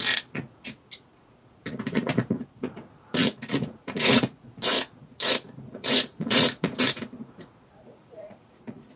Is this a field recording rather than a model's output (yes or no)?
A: no